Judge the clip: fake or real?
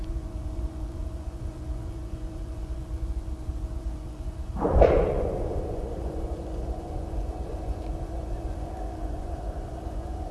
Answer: fake